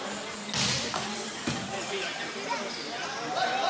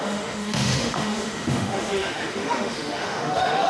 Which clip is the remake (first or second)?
second